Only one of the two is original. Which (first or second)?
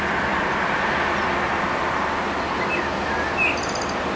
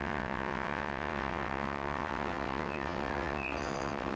first